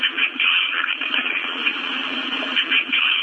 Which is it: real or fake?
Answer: fake